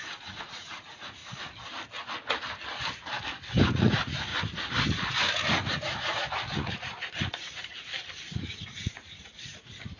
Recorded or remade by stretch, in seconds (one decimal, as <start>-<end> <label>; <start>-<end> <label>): 0.0-1.2 remade; 1.2-3.8 recorded; 3.8-4.3 remade; 4.3-5.5 recorded; 5.5-7.9 remade; 7.9-8.4 recorded; 8.4-10.0 remade